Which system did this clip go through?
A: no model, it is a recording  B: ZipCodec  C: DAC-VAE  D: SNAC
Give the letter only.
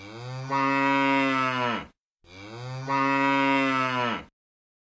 A